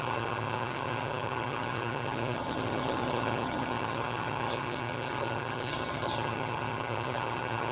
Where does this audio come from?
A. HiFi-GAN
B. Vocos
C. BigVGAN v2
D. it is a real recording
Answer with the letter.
A